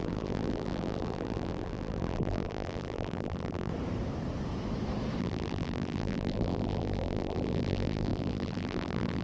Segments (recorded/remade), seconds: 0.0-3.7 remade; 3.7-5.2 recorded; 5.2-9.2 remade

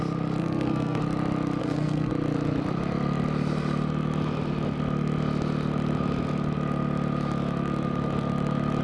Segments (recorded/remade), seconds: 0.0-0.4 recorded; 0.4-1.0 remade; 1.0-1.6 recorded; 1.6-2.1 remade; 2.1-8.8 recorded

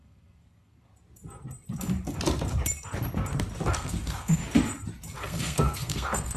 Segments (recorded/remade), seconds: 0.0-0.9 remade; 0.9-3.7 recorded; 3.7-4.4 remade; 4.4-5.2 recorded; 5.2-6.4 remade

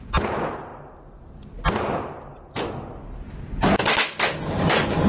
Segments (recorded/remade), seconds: 0.0-5.1 recorded